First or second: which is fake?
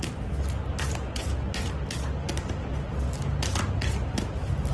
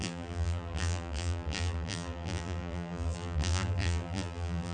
second